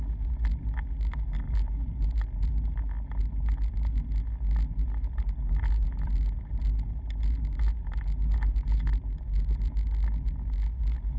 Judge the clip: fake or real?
real